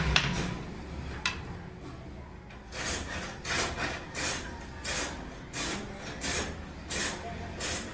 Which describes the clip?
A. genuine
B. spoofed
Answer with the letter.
A